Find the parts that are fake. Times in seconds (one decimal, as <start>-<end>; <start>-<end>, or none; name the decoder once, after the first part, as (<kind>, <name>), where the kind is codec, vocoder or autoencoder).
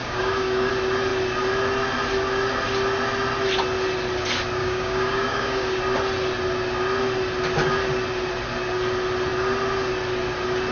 0.0-0.7 (codec, DAC); 4.6-5.8